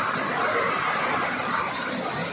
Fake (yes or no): no